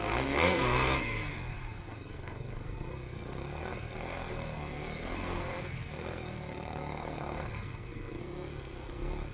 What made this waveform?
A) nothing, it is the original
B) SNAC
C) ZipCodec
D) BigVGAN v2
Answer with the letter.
B